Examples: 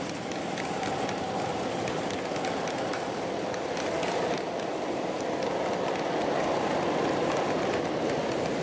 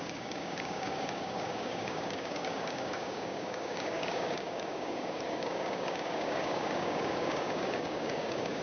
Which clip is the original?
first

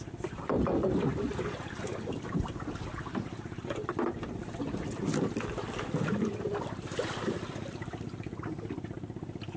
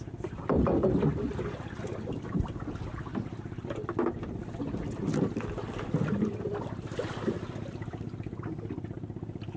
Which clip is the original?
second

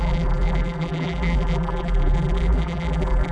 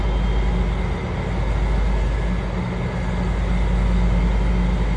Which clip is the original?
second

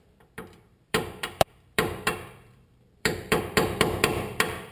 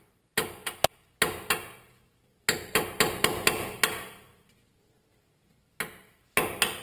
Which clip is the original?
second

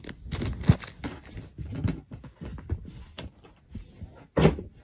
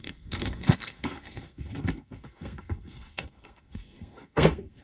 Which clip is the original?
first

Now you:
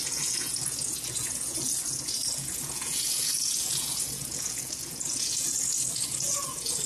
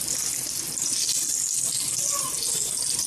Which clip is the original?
second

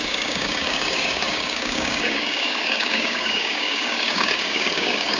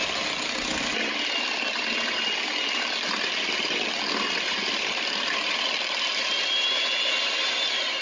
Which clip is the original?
second